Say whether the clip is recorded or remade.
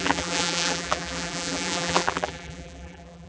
remade